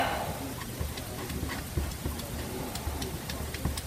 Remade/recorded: recorded